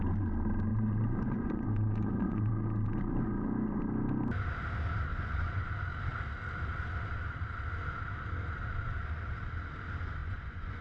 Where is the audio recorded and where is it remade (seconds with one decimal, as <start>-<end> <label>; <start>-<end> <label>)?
0.0-0.7 recorded; 0.7-2.5 remade; 2.5-5.1 recorded; 5.1-5.6 remade; 5.6-10.2 recorded; 10.2-10.8 remade